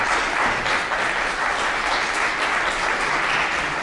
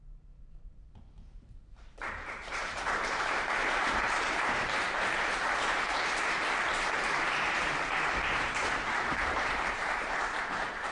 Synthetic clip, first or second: second